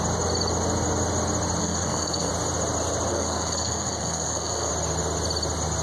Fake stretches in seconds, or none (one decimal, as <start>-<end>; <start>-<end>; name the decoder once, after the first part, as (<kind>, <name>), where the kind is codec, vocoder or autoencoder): 1.6-2.3 (codec, SNAC); 3.1-4.7